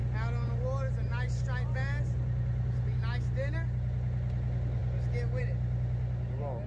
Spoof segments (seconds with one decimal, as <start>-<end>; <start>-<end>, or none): none